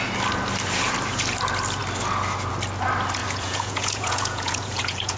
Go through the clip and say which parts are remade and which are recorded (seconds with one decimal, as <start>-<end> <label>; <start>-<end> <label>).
0.0-3.2 recorded; 3.2-5.2 remade